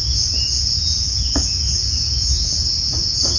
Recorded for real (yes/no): no